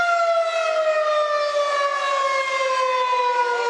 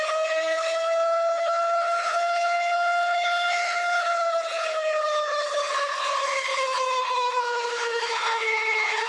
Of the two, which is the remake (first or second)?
second